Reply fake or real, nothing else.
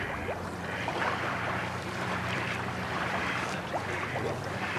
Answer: fake